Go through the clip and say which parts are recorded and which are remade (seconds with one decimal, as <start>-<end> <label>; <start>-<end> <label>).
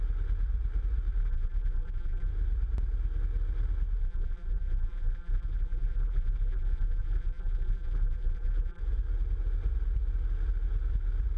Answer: 0.0-1.2 recorded; 1.2-2.3 remade; 2.3-4.0 recorded; 4.0-8.8 remade; 8.8-11.4 recorded